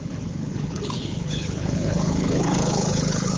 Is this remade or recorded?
remade